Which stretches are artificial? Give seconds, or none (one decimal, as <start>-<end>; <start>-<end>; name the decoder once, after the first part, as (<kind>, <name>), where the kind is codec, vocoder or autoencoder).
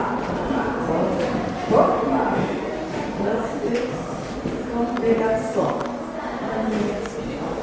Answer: none